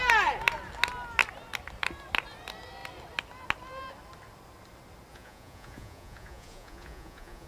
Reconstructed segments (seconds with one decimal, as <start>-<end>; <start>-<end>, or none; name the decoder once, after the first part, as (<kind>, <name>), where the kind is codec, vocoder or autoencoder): 5.1-7.5 (vocoder, Vocos)